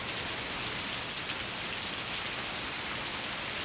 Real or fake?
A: real